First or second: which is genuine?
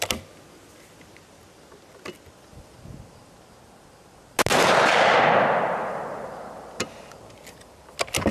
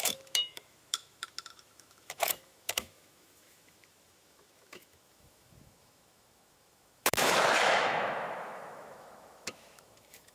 first